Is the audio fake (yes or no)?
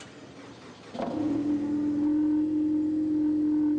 no